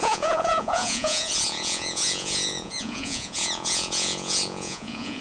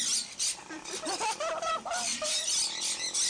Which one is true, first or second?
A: second